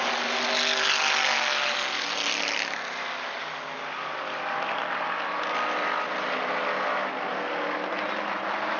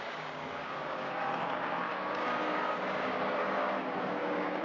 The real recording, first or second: first